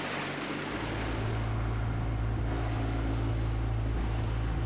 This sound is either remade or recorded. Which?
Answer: recorded